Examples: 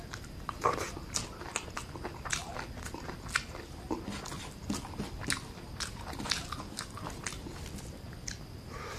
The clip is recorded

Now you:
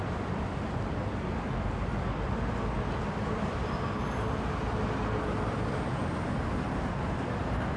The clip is recorded